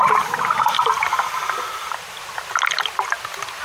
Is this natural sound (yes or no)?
yes